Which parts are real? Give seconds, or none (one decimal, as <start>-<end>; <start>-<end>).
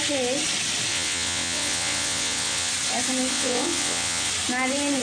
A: 0.0-0.9; 2.7-3.3; 4.3-5.0